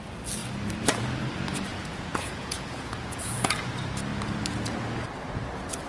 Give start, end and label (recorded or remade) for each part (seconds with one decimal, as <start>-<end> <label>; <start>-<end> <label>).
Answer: 0.0-1.7 recorded; 1.7-3.6 remade; 3.6-5.9 recorded